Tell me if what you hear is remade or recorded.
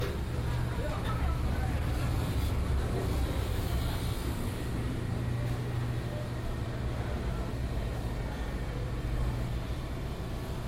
recorded